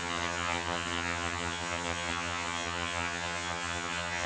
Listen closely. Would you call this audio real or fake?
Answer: fake